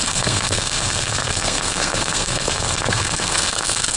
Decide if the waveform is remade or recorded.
remade